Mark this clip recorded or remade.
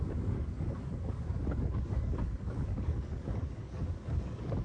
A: remade